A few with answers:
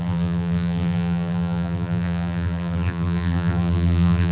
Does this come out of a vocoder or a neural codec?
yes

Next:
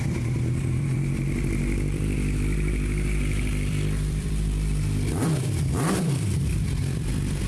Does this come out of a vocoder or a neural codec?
yes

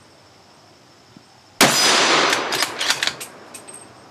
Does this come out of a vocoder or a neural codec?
no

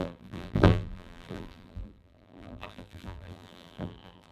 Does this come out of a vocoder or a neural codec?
yes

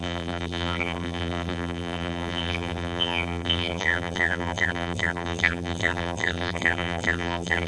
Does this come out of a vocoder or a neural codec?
yes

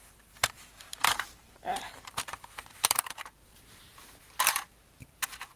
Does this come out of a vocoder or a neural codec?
yes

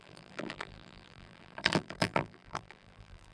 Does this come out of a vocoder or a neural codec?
yes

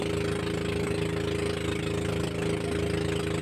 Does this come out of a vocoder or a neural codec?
no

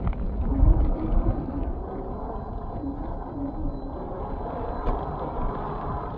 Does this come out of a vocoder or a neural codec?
yes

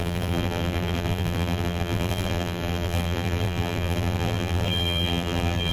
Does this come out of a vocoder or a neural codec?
yes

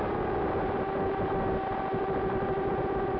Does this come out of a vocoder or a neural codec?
no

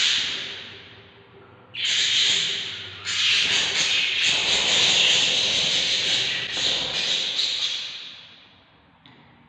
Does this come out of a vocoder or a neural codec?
no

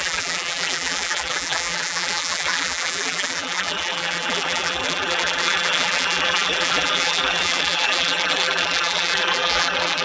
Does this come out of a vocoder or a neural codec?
yes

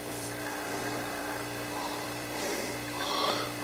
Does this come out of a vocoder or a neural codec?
yes